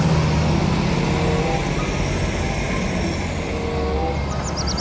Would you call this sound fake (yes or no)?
no